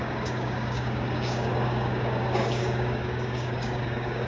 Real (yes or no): no